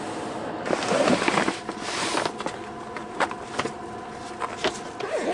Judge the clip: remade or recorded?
recorded